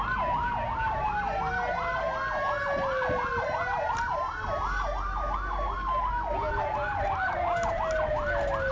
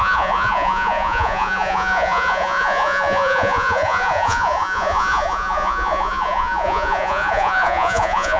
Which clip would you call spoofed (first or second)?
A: second